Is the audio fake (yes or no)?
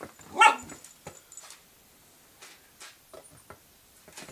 no